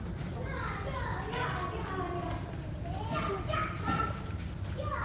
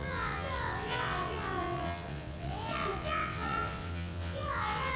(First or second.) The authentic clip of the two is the first